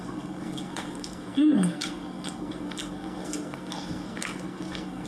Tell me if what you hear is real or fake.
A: fake